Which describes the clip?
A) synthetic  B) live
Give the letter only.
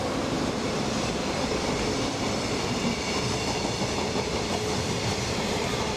B